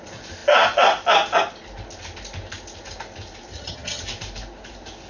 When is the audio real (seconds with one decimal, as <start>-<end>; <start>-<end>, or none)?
0.0-3.5; 4.0-5.1